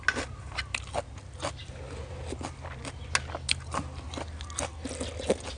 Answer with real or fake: real